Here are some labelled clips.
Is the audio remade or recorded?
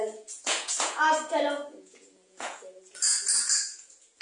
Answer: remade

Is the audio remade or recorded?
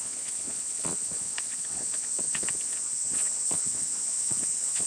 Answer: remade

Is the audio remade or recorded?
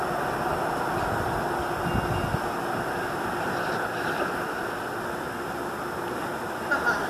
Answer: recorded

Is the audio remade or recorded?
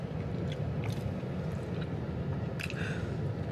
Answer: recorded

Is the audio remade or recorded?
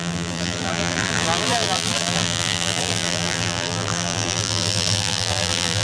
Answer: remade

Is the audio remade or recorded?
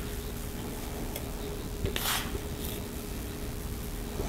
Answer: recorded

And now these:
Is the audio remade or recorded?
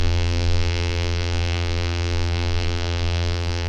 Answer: remade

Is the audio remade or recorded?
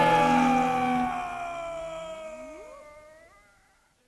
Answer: recorded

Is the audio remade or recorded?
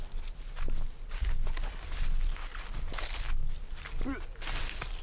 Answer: recorded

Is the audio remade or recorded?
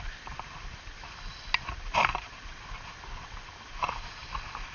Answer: recorded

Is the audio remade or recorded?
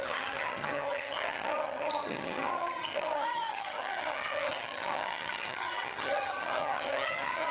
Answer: remade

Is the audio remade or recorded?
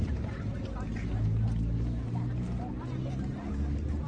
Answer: recorded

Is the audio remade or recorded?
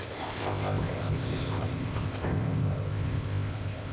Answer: remade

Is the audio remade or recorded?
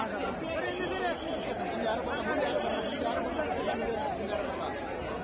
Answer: recorded